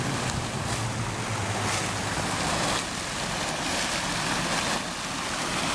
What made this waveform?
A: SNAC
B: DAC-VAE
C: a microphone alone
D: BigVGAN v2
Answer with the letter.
C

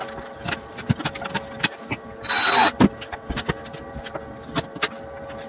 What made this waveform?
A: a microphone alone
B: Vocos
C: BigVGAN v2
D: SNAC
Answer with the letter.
A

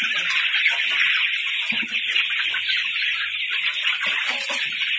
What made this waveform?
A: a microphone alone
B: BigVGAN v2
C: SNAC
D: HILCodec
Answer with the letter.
A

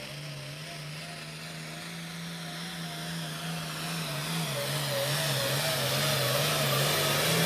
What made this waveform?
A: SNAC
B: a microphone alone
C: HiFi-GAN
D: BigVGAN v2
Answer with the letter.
B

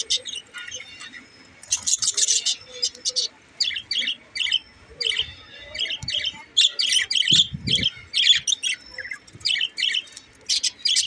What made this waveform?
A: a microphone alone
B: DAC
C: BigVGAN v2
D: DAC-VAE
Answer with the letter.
A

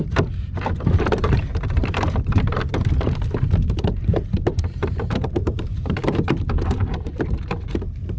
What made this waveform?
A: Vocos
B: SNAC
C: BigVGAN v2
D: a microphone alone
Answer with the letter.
C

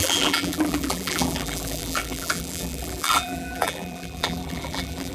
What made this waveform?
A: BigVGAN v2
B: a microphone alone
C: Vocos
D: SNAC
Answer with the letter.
A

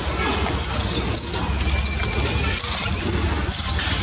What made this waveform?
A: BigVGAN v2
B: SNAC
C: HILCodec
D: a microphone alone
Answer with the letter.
D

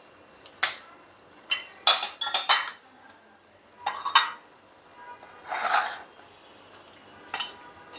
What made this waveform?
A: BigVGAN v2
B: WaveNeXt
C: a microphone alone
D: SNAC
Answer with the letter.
C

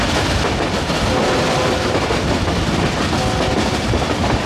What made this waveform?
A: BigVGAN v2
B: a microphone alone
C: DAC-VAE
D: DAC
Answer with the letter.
B